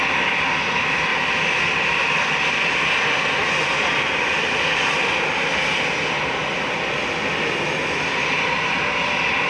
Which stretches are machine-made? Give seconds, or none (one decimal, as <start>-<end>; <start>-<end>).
none